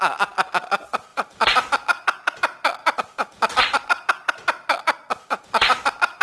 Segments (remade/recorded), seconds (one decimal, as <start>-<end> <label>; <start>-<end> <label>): 0.0-6.2 recorded